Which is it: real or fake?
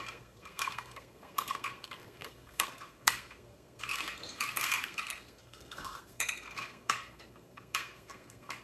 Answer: fake